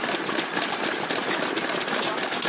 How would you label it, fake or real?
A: real